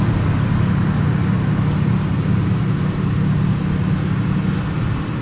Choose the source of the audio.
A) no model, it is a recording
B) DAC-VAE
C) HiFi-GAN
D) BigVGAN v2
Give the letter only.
A